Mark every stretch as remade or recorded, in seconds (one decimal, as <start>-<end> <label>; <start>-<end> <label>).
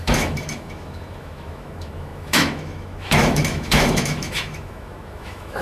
0.0-5.6 remade